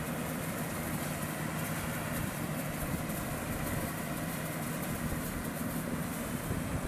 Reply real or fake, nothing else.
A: fake